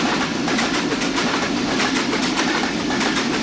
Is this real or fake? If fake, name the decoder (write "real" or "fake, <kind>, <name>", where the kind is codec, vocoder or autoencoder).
fake, vocoder, BigVGAN v2